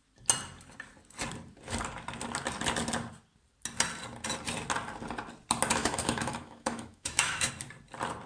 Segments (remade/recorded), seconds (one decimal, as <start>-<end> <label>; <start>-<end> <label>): 0.0-5.8 recorded; 5.8-7.5 remade; 7.5-8.3 recorded